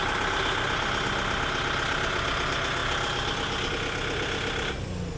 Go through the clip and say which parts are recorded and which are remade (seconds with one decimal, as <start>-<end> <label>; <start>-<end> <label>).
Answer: 0.0-5.2 recorded